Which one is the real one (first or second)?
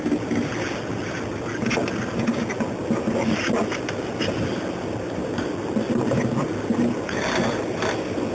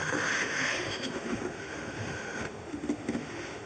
first